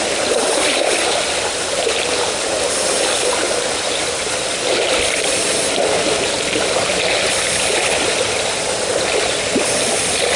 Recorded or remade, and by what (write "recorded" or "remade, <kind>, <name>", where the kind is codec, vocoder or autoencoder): recorded